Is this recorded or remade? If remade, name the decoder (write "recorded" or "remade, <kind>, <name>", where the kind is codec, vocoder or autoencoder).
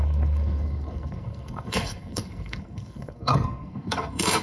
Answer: remade, codec, SNAC